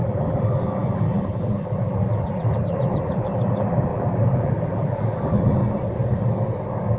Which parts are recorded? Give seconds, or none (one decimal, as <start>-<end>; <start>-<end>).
5.6-7.0